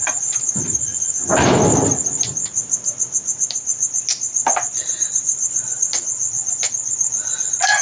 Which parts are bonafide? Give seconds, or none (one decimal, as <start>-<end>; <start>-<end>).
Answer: 0.0-4.1; 5.0-5.4; 5.9-7.8